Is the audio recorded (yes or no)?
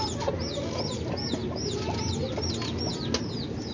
yes